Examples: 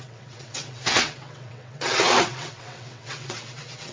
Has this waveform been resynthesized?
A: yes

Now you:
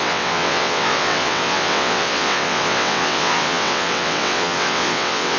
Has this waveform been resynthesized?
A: yes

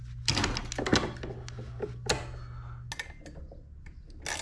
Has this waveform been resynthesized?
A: no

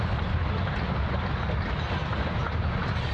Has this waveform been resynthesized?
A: no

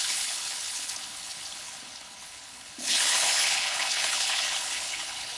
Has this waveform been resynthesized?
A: yes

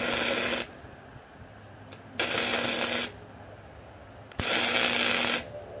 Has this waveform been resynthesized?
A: no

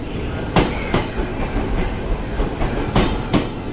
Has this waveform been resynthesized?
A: no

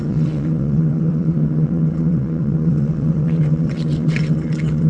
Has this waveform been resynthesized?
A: yes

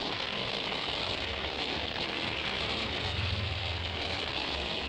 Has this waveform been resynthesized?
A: yes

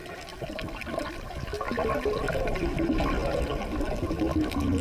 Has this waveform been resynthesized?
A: no